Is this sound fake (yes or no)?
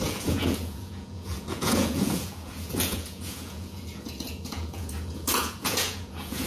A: yes